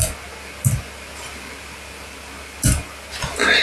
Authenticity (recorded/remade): recorded